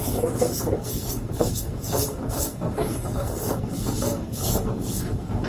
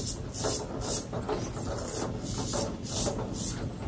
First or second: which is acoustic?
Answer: second